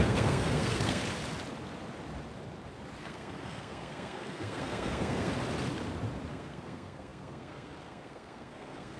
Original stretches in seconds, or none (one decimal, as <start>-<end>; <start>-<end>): 1.0-3.0; 5.3-6.3